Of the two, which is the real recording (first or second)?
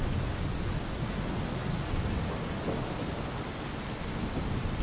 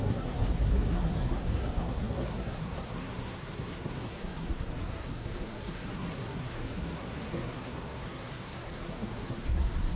first